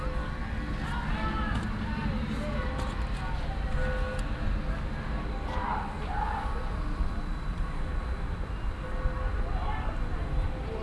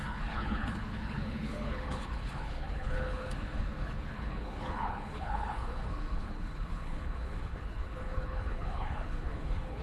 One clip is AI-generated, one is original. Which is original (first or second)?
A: first